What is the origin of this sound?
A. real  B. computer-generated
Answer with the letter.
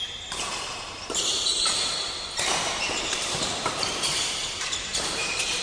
B